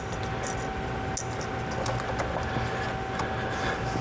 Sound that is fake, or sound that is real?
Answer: real